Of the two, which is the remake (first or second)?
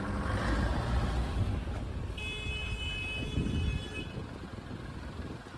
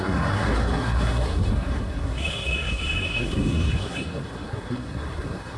second